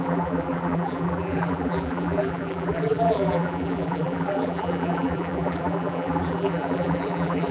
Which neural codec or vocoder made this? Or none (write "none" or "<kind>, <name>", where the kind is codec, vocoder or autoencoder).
vocoder, BigVGAN v2